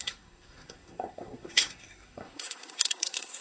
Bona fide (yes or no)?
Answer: no